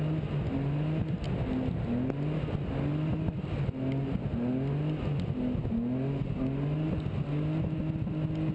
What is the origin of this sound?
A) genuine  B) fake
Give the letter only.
A